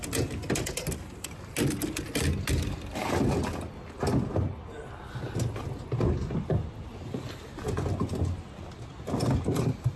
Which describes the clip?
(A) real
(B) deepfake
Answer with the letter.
A